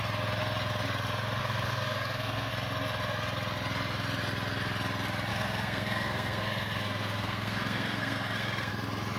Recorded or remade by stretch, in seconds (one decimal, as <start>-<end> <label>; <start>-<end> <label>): 0.0-1.4 recorded; 1.4-2.5 remade; 2.5-5.3 recorded; 5.3-8.7 remade; 8.7-9.2 recorded